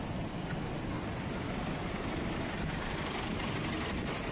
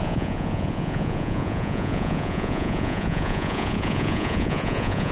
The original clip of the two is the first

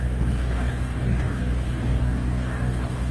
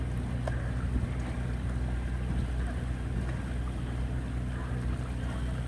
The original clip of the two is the second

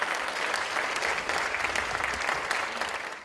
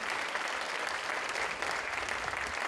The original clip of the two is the first